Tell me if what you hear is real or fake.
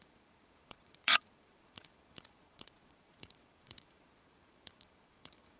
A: fake